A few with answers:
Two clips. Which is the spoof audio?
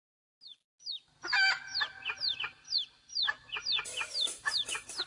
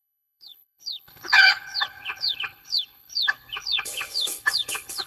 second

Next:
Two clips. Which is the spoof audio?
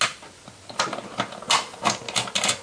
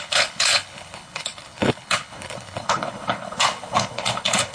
second